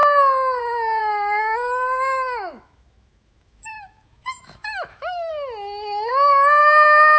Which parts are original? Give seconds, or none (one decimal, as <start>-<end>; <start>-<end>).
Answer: 0.0-1.0; 5.3-6.6